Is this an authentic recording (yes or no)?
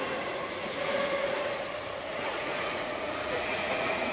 no